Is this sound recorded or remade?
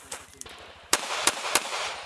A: remade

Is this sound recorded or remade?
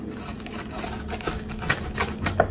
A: recorded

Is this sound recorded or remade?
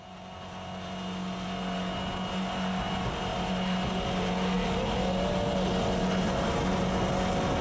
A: recorded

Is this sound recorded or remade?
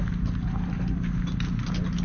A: recorded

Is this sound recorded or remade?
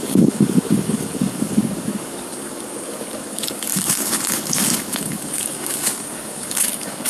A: remade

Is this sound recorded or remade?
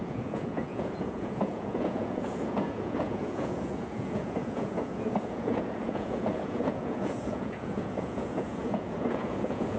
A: remade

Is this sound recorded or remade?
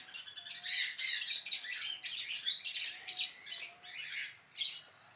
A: recorded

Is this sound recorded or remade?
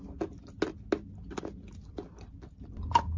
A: recorded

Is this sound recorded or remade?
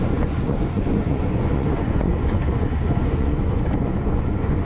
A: remade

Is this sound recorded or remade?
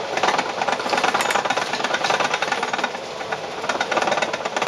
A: recorded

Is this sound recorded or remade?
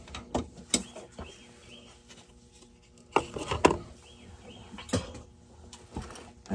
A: recorded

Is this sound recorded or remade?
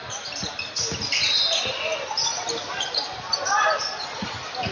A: recorded